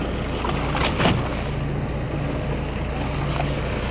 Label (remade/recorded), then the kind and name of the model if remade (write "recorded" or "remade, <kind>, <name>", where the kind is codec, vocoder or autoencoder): recorded